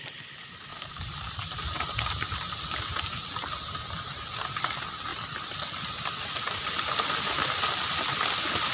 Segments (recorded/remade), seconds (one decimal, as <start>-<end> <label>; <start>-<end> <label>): 0.0-0.7 recorded; 0.7-1.7 remade; 1.7-8.7 recorded